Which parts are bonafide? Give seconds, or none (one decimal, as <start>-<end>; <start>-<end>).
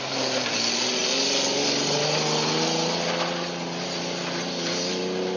0.0-5.4